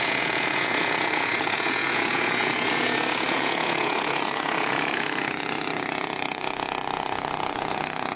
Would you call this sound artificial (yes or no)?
yes